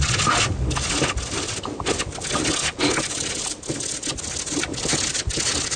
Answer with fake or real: real